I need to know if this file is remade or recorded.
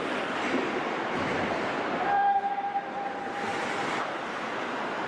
remade